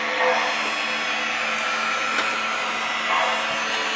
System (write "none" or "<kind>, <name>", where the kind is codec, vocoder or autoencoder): none